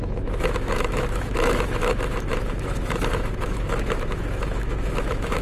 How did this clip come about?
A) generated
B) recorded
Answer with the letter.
A